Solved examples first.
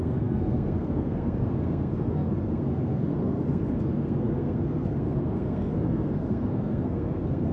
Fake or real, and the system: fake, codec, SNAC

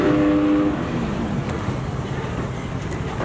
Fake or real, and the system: real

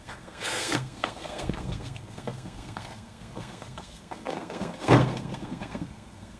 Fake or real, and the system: fake, codec, SNAC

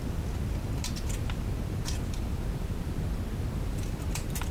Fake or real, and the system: real